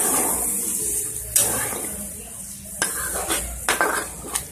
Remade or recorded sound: recorded